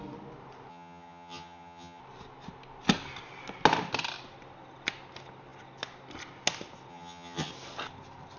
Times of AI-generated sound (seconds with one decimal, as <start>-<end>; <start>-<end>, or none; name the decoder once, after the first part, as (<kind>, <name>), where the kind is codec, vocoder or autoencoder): 0.7-2.0 (vocoder, HiFi-GAN); 6.9-7.5